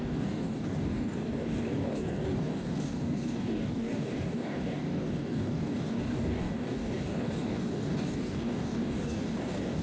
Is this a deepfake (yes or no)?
yes